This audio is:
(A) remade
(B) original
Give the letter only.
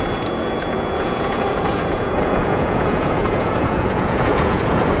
A